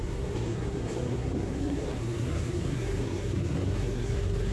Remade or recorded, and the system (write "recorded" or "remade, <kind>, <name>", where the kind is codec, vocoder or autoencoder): remade, codec, SNAC